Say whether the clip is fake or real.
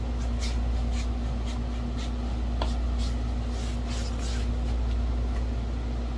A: real